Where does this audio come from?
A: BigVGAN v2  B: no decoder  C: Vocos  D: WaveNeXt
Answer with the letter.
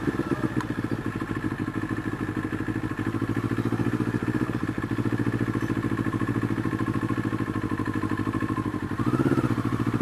B